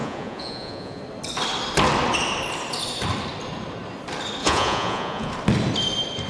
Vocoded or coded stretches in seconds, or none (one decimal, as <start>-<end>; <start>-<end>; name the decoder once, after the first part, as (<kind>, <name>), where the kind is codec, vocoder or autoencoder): 0.0-1.0 (vocoder, Vocos); 4.4-5.3